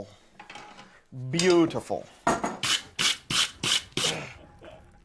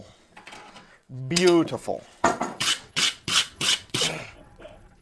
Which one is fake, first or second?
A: second